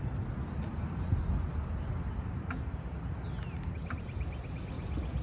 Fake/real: real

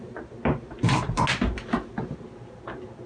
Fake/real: real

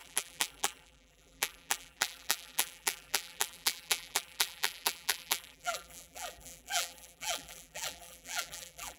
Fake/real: fake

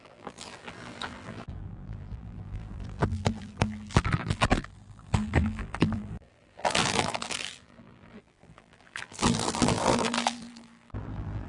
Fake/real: fake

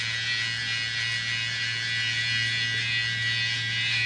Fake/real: real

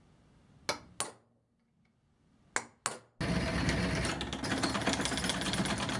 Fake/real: real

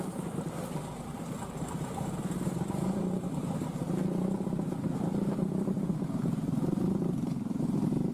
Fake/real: real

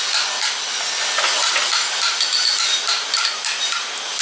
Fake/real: real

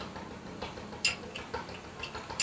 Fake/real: real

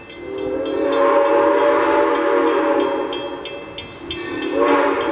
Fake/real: real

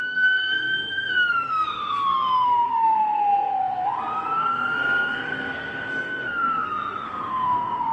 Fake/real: fake